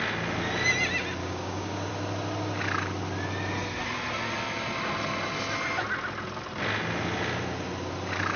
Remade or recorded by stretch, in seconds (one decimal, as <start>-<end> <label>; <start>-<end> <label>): 0.0-1.2 recorded; 1.2-1.9 remade; 1.9-8.4 recorded